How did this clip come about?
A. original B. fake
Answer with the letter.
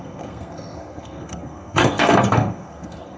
B